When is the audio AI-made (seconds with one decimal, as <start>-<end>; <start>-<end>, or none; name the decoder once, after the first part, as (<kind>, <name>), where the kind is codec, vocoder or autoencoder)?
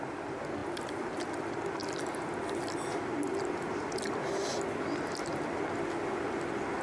none